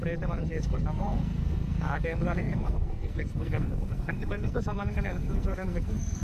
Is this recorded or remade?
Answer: remade